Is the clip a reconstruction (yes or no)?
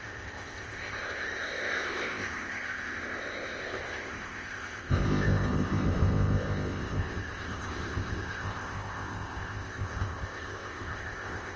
yes